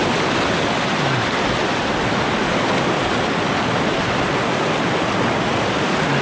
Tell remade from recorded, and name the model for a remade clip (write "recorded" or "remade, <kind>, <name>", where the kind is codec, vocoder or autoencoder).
recorded